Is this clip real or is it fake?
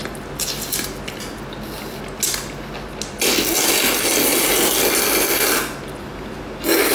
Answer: real